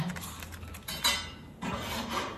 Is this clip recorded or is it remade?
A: recorded